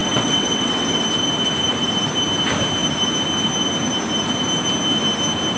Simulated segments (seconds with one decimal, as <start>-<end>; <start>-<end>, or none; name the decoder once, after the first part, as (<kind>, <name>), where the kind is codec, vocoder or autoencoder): 0.0-1.0 (vocoder, WaveNeXt)